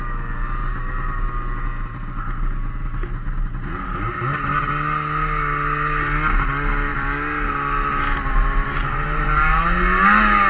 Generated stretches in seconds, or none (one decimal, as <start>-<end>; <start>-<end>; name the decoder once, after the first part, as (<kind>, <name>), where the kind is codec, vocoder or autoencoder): 0.6-1.2 (vocoder, BigVGAN v2); 8.8-9.6

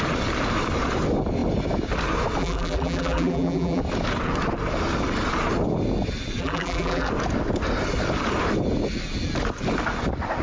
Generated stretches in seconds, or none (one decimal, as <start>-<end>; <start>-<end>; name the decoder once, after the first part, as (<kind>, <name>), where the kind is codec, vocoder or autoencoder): 2.4-3.8 (vocoder, BigVGAN v2); 6.4-7.1

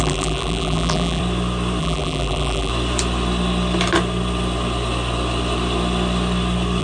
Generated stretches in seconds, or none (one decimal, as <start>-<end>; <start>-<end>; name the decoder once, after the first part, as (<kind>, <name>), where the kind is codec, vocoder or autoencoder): 0.0-1.2 (vocoder, BigVGAN v2); 1.8-2.7

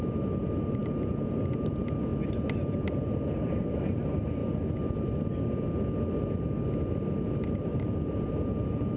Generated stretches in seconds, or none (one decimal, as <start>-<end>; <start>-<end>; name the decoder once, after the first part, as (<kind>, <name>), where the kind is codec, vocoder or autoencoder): 0.0-2.1 (vocoder, BigVGAN v2); 2.9-4.4; 7.2-9.0

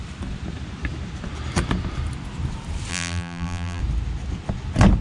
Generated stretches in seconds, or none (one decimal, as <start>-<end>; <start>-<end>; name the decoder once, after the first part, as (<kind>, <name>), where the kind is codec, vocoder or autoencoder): 2.9-3.8 (vocoder, BigVGAN v2)

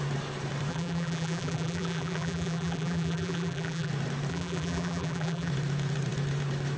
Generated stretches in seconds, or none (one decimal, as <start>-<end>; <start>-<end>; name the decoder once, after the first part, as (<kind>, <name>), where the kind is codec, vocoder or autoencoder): 0.7-3.9 (vocoder, BigVGAN v2); 4.3-5.5

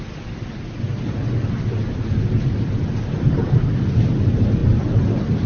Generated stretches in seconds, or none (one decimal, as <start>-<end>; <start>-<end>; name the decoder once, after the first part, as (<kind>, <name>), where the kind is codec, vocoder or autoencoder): none